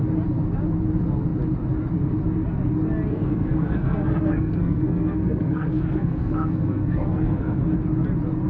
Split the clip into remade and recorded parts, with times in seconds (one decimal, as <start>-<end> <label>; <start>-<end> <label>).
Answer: 0.0-3.1 recorded; 3.1-7.6 remade; 7.6-8.5 recorded

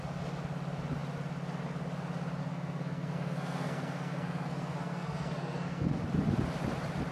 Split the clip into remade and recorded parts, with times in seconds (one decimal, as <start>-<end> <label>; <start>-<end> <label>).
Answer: 0.0-2.4 recorded; 2.4-6.0 remade; 6.0-7.1 recorded

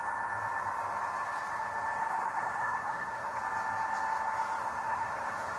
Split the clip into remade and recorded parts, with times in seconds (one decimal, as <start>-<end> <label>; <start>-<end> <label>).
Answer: 0.0-2.0 recorded; 2.0-3.4 remade; 3.4-4.6 recorded; 4.6-5.6 remade

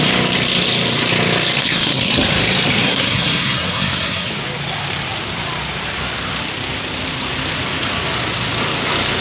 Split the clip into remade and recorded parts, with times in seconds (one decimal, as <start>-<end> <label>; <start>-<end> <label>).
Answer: 0.0-1.6 recorded; 1.6-2.1 remade; 2.1-2.8 recorded; 2.8-4.3 remade; 4.3-9.2 recorded

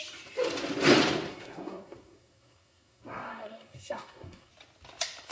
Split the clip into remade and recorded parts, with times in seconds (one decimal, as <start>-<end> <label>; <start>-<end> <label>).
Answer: 0.0-1.3 recorded; 1.3-4.5 remade; 4.5-5.3 recorded